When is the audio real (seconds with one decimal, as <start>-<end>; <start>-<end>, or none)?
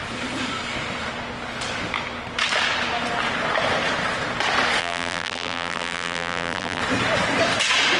0.0-4.8; 6.8-8.0